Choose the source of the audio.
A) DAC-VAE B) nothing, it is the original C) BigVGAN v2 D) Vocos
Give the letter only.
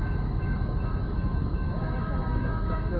A